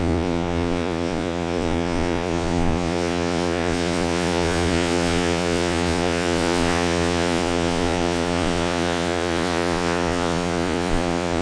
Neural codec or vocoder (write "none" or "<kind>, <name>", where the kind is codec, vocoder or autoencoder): vocoder, Vocos